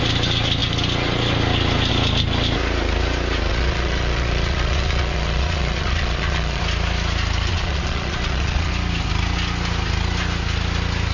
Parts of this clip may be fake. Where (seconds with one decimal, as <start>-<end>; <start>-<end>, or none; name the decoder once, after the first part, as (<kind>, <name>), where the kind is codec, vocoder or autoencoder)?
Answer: 3.5-6.6 (vocoder, Vocos); 7.5-8.7